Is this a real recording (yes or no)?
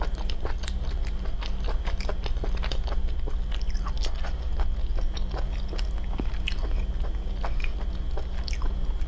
yes